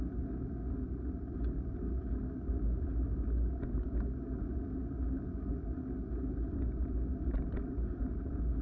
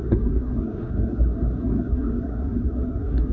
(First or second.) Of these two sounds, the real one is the first